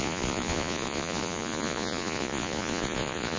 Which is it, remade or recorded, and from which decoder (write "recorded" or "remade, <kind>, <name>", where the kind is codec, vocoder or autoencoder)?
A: remade, vocoder, Vocos